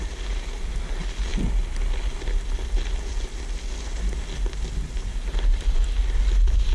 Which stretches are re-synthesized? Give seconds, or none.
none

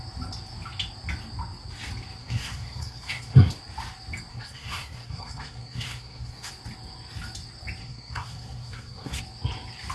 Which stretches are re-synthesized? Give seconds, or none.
2.2-3.5; 4.3-6.5; 7.8-9.2

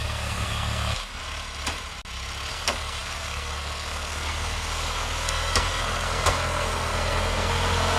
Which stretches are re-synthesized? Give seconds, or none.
0.0-1.2; 2.5-8.0

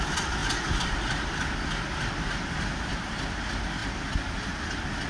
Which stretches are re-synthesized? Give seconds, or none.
none

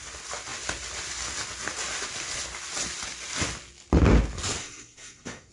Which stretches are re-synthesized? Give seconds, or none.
4.6-5.5

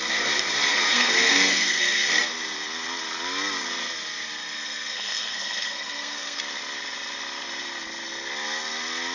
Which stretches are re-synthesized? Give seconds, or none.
0.7-1.8; 4.4-6.4